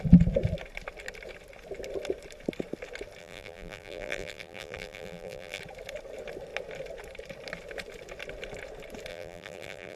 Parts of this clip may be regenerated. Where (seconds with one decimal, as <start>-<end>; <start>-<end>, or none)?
3.2-5.6; 9.1-10.0